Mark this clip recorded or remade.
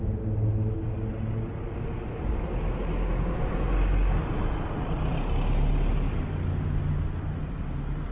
recorded